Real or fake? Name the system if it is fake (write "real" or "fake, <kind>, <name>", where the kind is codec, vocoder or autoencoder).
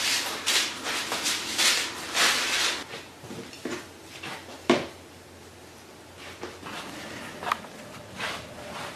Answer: real